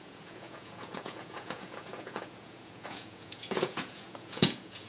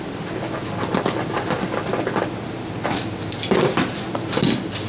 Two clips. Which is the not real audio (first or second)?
first